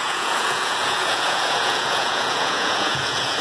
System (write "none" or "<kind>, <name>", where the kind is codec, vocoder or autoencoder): vocoder, Vocos